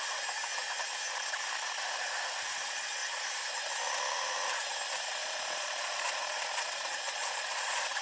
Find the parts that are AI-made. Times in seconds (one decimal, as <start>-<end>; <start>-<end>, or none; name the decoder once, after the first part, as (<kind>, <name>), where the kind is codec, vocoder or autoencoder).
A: 5.2-8.0 (vocoder, Vocos)